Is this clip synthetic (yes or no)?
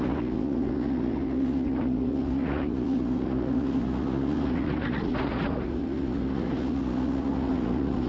yes